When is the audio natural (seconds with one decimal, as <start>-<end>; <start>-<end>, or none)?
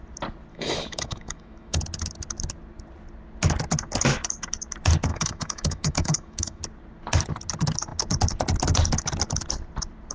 0.0-0.5; 1.8-5.1; 6.6-10.1